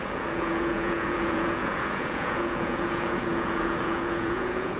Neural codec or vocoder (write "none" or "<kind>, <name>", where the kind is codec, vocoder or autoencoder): vocoder, Vocos